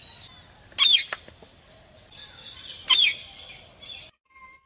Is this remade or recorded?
recorded